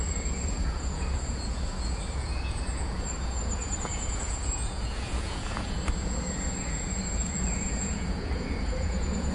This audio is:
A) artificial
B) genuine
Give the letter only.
A